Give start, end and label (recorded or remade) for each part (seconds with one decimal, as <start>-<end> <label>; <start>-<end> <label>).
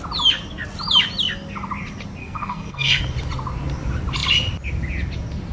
0.0-2.2 recorded; 2.2-3.0 remade; 3.0-5.5 recorded